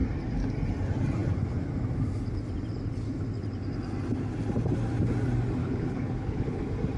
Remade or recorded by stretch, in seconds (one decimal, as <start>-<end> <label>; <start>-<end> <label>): 0.0-5.6 recorded; 5.6-6.6 remade; 6.6-7.0 recorded